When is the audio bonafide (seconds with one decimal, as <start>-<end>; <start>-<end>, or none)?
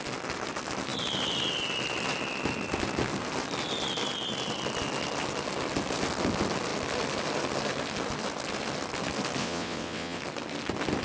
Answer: 0.0-9.4; 10.2-11.0